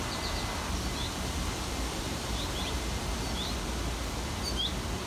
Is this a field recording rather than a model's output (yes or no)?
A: yes